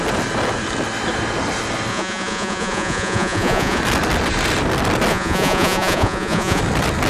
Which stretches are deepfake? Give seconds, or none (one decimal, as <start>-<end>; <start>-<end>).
1.9-3.8; 5.1-6.6